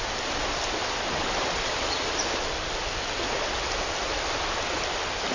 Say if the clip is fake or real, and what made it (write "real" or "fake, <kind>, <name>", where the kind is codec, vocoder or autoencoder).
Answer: real